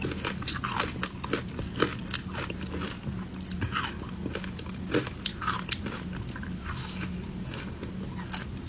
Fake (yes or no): no